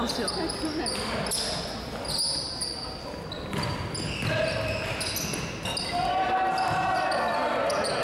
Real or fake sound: real